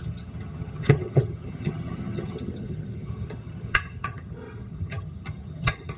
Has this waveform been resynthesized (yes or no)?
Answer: yes